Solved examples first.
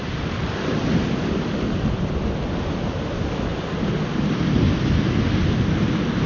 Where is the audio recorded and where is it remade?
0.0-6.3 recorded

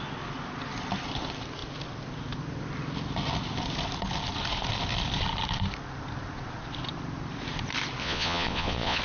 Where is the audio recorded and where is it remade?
0.0-8.0 recorded; 8.0-9.0 remade